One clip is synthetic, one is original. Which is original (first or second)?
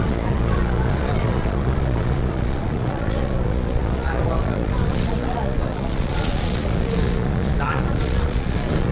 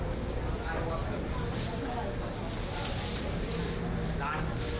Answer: second